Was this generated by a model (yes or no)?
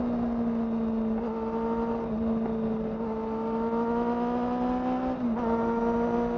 no